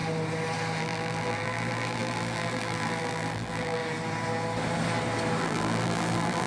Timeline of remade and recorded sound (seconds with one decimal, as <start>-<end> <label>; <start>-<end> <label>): 0.0-0.8 recorded; 0.8-3.8 remade; 3.8-5.4 recorded; 5.4-6.5 remade